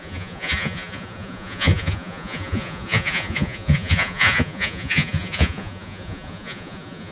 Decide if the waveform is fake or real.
fake